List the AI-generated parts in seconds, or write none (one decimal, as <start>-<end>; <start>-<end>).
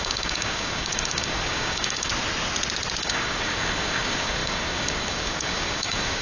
0.0-2.1; 3.0-6.2